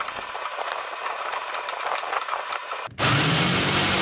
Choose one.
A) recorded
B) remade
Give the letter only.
B